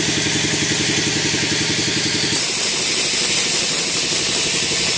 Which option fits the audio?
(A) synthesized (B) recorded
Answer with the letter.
B